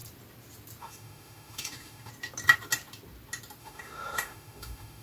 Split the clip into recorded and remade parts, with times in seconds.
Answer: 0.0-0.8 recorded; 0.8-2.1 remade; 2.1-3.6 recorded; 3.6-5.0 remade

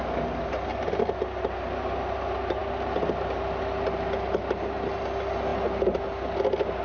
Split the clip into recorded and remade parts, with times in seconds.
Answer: 0.0-6.8 recorded

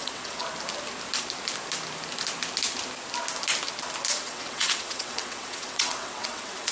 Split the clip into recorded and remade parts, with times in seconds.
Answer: 0.0-0.4 remade; 0.4-4.1 recorded; 4.1-6.7 remade

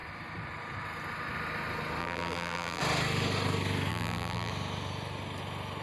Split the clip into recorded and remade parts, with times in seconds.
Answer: 0.0-2.0 recorded; 2.0-2.8 remade; 2.8-3.9 recorded; 3.9-4.5 remade; 4.5-5.8 recorded

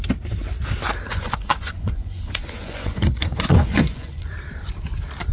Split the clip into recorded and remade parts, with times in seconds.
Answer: 0.0-1.1 recorded; 1.1-4.3 remade; 4.3-5.3 recorded